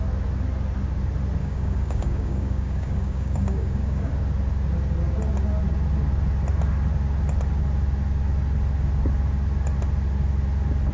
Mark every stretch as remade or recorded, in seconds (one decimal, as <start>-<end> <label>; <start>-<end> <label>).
0.0-1.4 recorded; 1.4-4.1 remade; 4.1-10.9 recorded